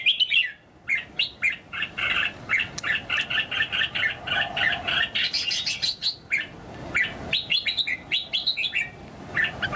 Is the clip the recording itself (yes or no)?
yes